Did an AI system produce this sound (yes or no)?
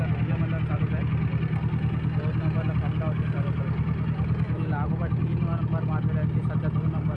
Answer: no